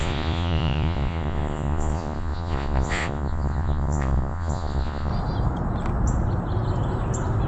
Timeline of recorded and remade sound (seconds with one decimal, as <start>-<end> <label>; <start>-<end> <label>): 0.0-5.1 remade; 5.1-7.5 recorded